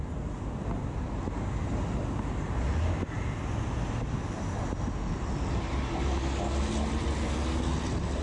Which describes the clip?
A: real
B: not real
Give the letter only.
A